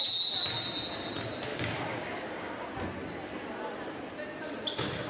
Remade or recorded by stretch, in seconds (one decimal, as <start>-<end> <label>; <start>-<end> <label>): 0.0-1.5 recorded; 1.5-2.7 remade; 2.7-5.1 recorded